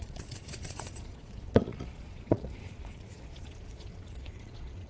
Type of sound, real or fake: fake